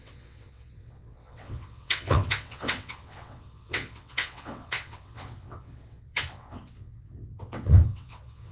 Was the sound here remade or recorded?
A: remade